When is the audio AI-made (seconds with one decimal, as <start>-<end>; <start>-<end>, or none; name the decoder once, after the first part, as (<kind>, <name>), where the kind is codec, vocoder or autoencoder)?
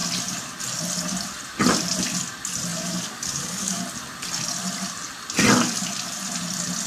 2.7-3.8 (codec, DAC)